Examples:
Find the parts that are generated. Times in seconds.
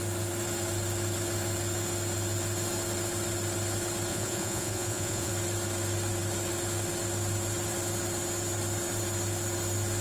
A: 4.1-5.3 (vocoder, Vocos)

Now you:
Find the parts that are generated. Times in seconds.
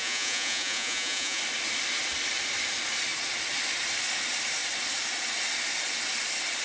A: 0.0-1.4 (vocoder, Vocos)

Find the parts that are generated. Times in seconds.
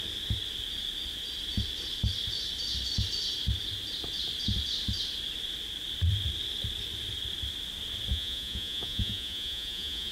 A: 8.1-10.1 (vocoder, Vocos)